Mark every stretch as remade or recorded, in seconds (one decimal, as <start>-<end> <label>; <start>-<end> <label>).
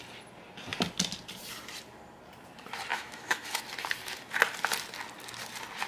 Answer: 0.0-2.9 recorded; 2.9-3.6 remade; 3.6-5.9 recorded